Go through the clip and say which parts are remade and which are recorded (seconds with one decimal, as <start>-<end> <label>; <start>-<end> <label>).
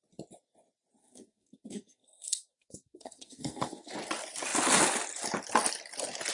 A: 0.0-1.0 recorded; 1.0-3.9 remade; 3.9-6.3 recorded